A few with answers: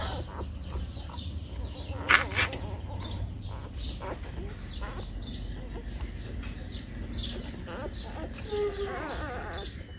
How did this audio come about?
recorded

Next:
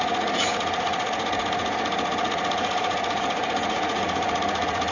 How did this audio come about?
remade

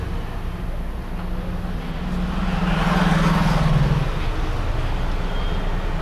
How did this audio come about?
recorded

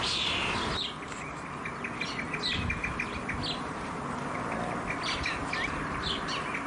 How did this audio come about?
recorded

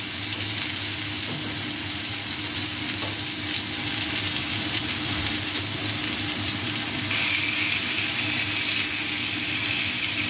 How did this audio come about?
recorded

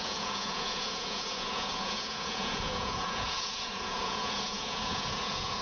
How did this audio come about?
remade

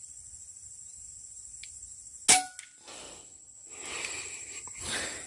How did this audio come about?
recorded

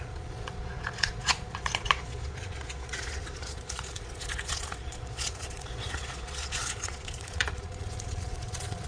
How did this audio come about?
remade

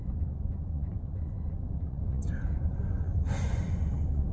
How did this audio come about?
remade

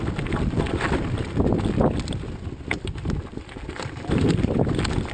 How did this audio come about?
recorded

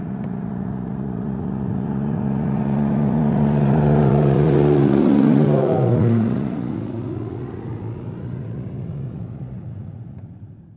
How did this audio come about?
remade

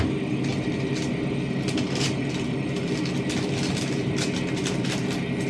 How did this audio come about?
recorded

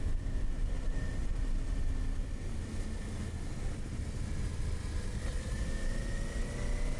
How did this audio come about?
recorded